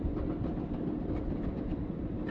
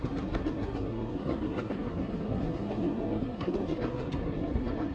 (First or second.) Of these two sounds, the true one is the first